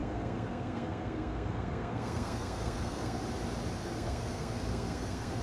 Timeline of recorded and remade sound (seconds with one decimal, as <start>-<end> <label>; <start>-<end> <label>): 0.0-3.2 remade; 3.2-3.8 recorded; 3.8-5.4 remade